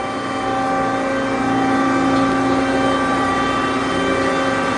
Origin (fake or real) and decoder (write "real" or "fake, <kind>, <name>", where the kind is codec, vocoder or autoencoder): real